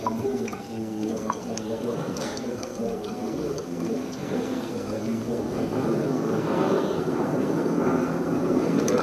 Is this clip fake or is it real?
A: fake